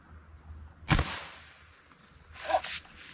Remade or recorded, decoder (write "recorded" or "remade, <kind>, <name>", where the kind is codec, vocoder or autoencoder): recorded